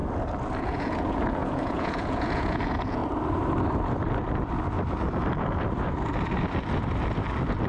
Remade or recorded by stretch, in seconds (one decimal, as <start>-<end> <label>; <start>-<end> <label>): 0.0-0.6 recorded; 0.6-3.0 remade; 3.0-7.7 recorded